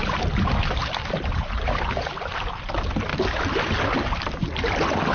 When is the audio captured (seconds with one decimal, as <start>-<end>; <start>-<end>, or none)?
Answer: 0.0-5.1